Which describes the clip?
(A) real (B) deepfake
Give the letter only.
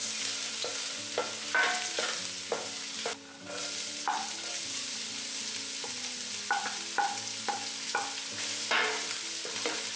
A